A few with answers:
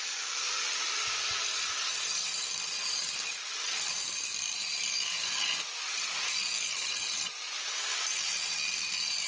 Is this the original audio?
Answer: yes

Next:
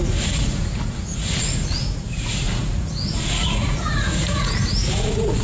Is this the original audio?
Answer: no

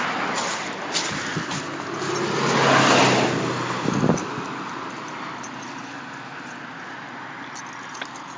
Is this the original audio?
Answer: yes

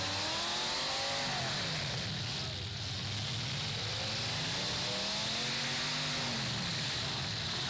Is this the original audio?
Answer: yes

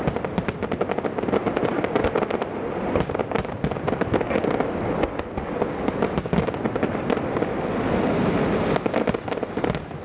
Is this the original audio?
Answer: yes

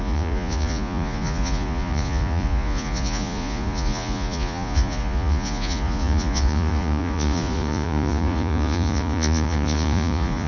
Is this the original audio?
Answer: no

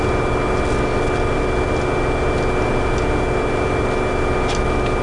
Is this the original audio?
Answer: yes